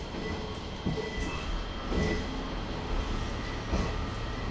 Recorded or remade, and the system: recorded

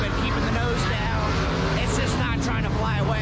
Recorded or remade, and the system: recorded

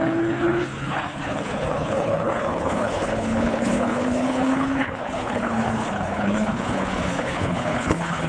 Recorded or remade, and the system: remade, codec, HILCodec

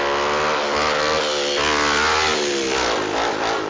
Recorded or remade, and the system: recorded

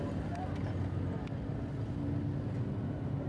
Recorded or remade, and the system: recorded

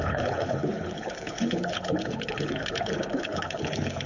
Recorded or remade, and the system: remade, codec, HILCodec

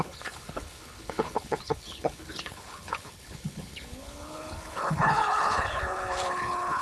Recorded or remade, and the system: remade, codec, HILCodec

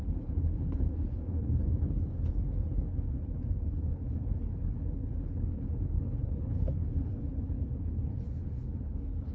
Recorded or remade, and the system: remade, codec, HILCodec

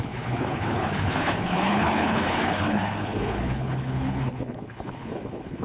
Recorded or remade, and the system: remade, codec, HILCodec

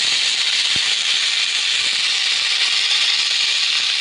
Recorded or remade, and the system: recorded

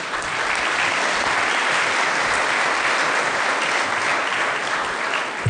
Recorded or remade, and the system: recorded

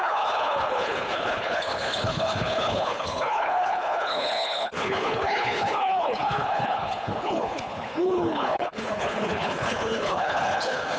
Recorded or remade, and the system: remade, codec, HILCodec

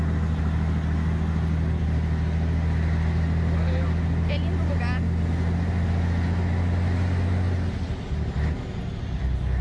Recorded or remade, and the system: recorded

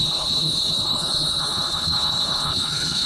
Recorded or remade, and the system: remade, codec, HILCodec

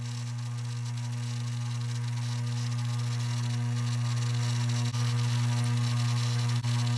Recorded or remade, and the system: recorded